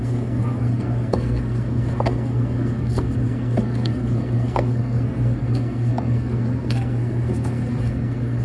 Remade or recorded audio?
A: remade